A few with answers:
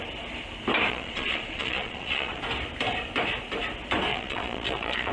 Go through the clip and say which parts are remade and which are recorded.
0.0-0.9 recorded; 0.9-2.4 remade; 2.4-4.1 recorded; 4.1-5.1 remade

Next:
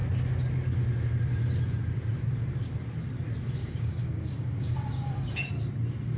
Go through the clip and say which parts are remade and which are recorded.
0.0-3.6 recorded; 3.6-5.5 remade; 5.5-6.2 recorded

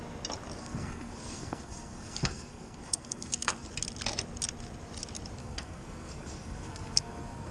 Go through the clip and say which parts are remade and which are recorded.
0.0-0.6 recorded; 0.6-3.7 remade; 3.7-5.4 recorded; 5.4-7.5 remade

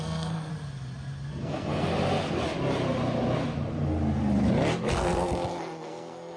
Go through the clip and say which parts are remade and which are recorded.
0.0-0.5 remade; 0.5-1.3 recorded; 1.3-1.9 remade; 1.9-4.9 recorded; 4.9-6.4 remade